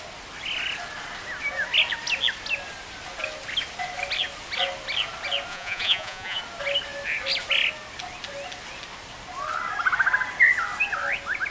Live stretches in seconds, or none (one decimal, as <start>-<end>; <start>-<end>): 0.0-5.5; 6.4-11.5